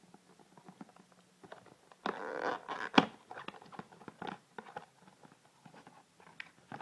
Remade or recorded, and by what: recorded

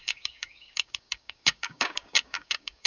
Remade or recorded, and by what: remade, codec, DAC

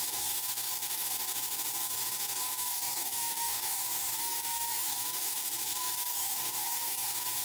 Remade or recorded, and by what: remade, codec, DAC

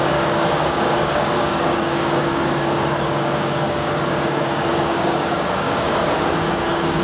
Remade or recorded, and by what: remade, codec, DAC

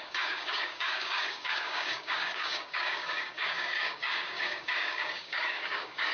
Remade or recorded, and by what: remade, codec, DAC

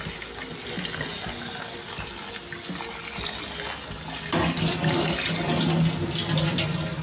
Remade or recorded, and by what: recorded